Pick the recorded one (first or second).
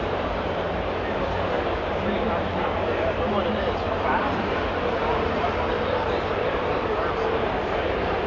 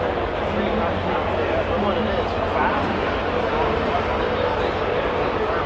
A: second